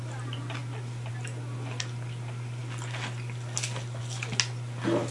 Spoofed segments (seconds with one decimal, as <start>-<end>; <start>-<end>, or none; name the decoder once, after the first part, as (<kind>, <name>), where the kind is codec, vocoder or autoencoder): none